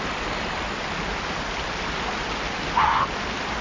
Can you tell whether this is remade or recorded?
recorded